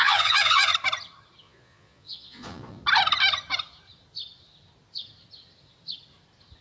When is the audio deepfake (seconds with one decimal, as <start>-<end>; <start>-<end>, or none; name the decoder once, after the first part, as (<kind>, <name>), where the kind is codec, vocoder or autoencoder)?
0.0-0.7 (vocoder, Vocos); 1.4-2.8